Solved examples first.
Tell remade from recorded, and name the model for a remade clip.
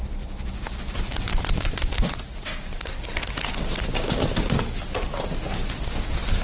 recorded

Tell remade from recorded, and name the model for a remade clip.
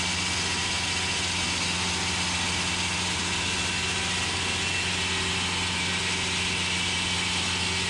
recorded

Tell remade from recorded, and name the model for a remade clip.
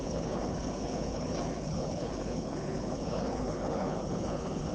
remade, codec, HILCodec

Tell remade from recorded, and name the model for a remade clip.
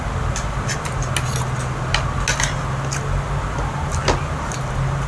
recorded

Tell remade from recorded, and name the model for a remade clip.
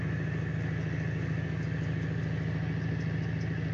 recorded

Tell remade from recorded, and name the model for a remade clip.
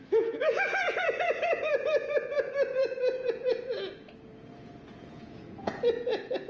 remade, vocoder, Vocos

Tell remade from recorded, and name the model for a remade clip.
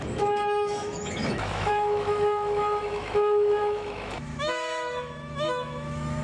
remade, autoencoder, DAC-VAE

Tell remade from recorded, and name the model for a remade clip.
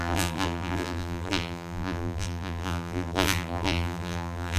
remade, vocoder, BigVGAN v2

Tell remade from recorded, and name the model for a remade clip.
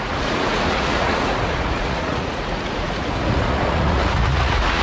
remade, vocoder, Vocos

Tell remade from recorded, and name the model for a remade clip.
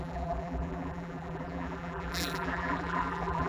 remade, vocoder, BigVGAN v2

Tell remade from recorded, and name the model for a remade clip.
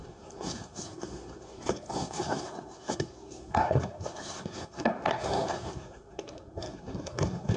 remade, codec, SNAC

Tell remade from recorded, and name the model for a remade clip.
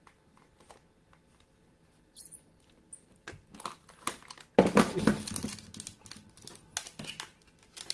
recorded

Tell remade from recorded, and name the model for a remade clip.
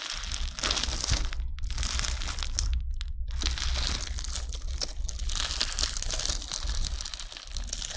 recorded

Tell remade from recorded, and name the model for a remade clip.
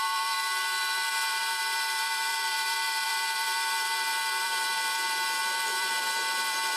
remade, vocoder, BigVGAN v2